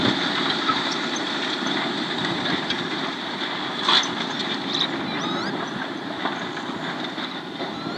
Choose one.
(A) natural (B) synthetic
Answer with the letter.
B